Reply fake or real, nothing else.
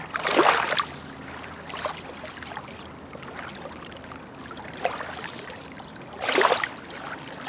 real